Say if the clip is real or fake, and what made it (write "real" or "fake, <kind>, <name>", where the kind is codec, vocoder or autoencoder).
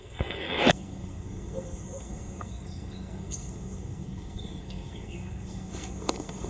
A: fake, codec, SNAC